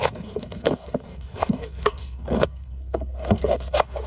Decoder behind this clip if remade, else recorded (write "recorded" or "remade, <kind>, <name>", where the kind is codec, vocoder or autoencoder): remade, codec, SNAC